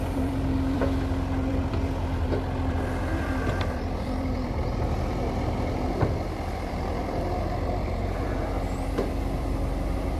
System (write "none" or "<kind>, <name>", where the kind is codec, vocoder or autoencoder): vocoder, BigVGAN v2